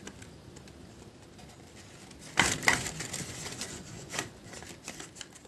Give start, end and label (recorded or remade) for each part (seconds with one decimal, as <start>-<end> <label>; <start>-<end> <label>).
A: 0.0-3.2 recorded; 3.2-4.6 remade; 4.6-5.5 recorded